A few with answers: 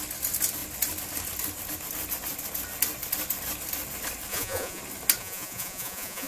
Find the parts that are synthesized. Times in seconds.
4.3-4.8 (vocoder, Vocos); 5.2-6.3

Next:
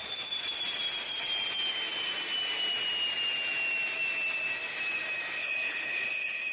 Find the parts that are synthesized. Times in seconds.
5.4-6.5 (codec, HILCodec)

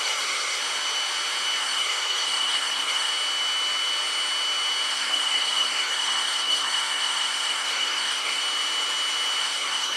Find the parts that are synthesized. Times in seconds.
0.0-0.6 (codec, SNAC); 1.6-3.1; 4.9-8.4; 9.4-10.0

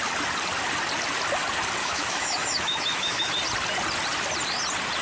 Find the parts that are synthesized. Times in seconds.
1.8-3.3 (autoencoder, DAC-VAE)

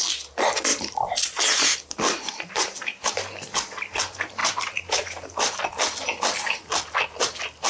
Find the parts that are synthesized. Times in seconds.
0.7-3.1 (vocoder, BigVGAN v2); 4.4-5.6

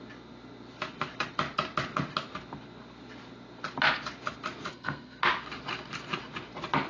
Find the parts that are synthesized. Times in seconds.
4.7-5.2 (codec, SNAC)